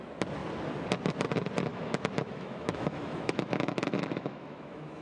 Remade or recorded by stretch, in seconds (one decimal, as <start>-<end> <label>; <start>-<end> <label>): 0.0-1.7 recorded; 1.7-5.0 remade